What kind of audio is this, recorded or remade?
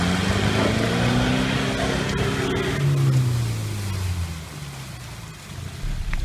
recorded